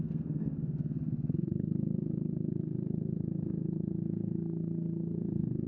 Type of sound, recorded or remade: remade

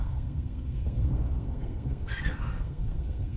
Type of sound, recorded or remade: remade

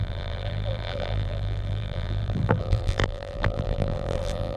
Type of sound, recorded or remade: remade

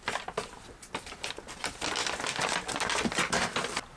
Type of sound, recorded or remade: recorded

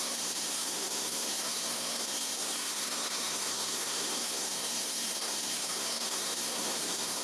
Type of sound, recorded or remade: remade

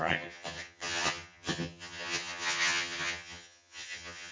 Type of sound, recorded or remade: remade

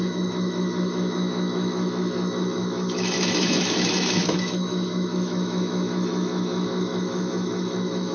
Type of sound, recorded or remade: remade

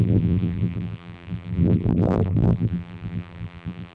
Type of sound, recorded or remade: remade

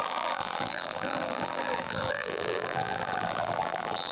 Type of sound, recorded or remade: remade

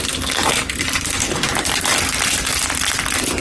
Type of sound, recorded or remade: recorded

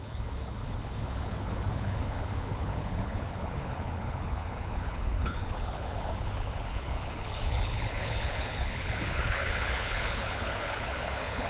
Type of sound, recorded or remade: remade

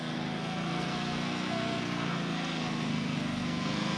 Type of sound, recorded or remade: remade